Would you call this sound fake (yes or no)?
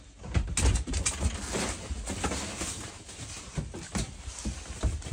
no